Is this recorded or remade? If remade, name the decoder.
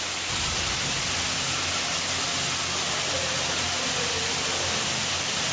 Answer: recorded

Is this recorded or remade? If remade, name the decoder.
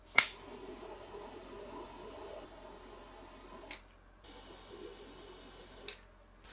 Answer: recorded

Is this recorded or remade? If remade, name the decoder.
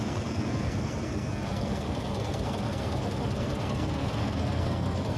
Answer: remade, codec, SNAC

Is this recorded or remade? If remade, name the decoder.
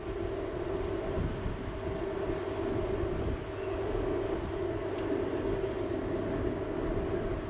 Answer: recorded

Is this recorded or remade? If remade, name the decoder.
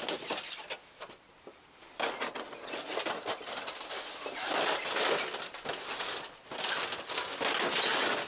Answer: recorded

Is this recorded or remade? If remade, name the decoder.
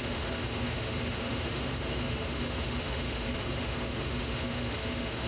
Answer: remade, autoencoder, DAC-VAE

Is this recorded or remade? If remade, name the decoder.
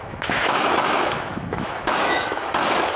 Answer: remade, autoencoder, DAC-VAE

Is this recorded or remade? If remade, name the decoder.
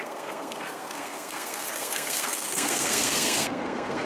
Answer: remade, codec, SNAC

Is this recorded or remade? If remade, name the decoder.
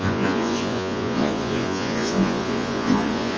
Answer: remade, vocoder, Vocos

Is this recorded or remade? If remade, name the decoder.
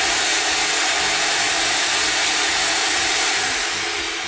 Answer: recorded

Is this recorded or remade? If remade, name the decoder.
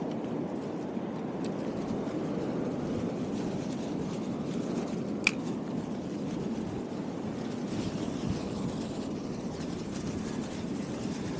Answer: recorded